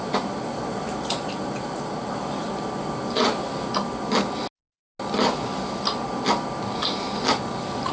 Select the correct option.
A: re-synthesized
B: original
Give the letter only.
B